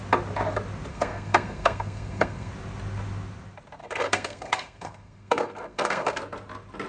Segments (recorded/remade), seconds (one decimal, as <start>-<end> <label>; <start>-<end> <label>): 0.0-0.9 recorded; 0.9-2.5 remade; 2.5-3.8 recorded; 3.8-6.2 remade; 6.2-6.9 recorded